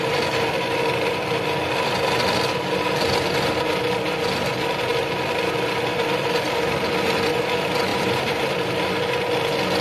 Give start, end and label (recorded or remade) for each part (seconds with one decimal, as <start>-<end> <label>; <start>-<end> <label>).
0.0-7.9 recorded; 7.9-8.5 remade; 8.5-9.8 recorded